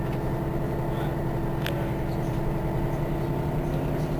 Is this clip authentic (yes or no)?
yes